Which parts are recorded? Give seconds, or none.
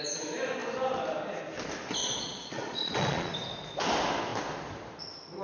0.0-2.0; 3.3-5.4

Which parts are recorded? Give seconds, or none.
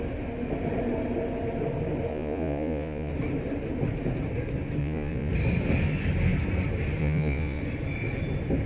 0.0-2.1; 3.1-4.8; 5.3-7.0; 7.6-8.7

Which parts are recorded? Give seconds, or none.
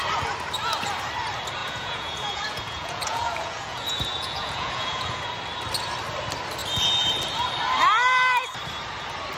0.0-1.6; 5.2-9.4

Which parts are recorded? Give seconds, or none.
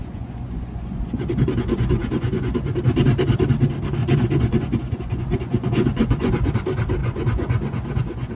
2.7-4.0; 6.5-7.0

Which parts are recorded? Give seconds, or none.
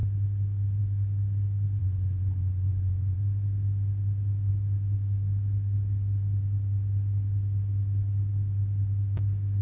0.0-1.8; 3.2-9.6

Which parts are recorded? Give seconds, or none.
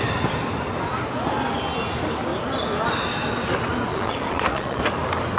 0.0-3.9; 4.8-5.4